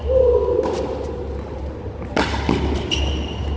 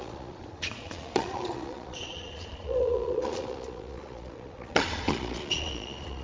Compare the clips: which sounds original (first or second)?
first